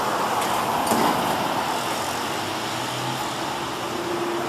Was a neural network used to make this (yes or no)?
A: no